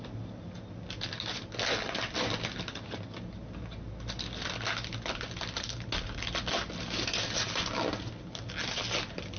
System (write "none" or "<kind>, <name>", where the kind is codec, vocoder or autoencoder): none